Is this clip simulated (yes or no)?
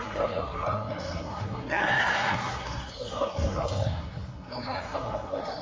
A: yes